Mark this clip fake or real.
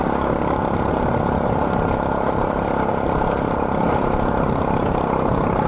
fake